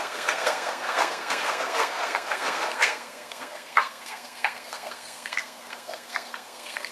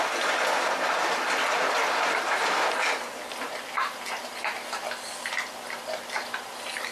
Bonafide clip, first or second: second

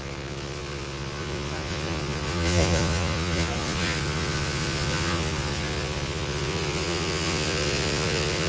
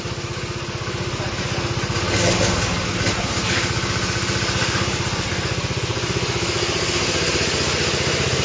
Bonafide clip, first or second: second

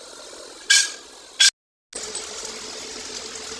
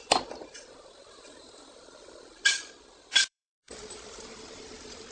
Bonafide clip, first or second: first